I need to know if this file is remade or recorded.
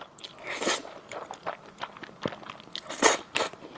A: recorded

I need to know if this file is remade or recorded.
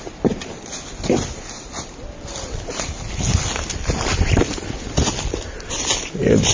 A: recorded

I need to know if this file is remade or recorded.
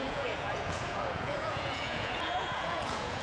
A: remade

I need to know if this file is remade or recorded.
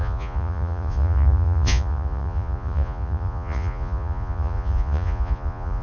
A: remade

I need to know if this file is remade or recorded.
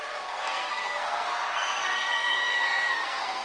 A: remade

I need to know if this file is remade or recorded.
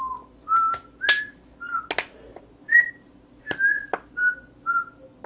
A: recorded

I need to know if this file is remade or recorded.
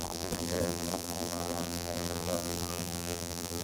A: remade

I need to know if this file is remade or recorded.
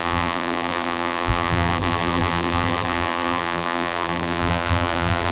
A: remade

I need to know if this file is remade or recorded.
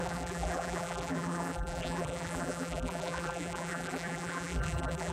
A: remade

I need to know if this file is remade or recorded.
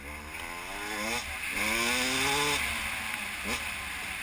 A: recorded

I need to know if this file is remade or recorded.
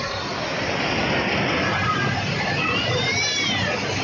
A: recorded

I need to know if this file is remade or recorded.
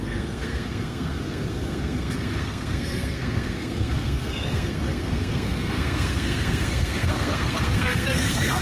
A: remade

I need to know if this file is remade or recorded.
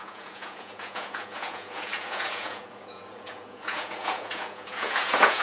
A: remade